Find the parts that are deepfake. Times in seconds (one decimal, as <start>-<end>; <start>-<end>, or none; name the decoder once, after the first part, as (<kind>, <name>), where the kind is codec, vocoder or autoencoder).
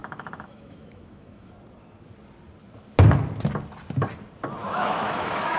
0.0-1.5 (autoencoder, DAC-VAE); 4.6-5.6